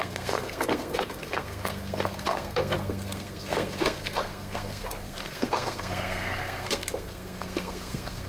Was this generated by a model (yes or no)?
yes